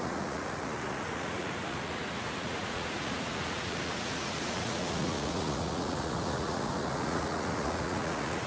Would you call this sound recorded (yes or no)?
no